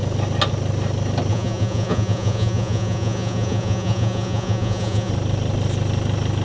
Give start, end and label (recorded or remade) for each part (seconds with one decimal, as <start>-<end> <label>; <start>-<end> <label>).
0.0-1.3 recorded; 1.3-5.1 remade; 5.1-6.4 recorded